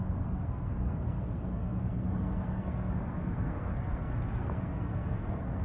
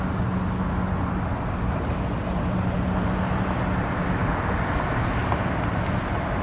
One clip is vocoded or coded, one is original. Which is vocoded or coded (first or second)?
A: first